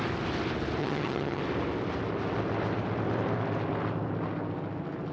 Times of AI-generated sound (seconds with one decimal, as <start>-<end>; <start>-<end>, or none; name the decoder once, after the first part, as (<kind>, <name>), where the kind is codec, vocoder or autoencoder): 0.8-1.4 (vocoder, HiFi-GAN)